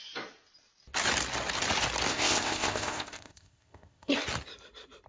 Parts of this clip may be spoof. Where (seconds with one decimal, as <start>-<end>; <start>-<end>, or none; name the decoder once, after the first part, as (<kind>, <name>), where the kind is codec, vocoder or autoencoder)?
2.1-4.1 (codec, ZipCodec)